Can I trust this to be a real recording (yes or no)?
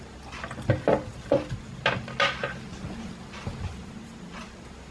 yes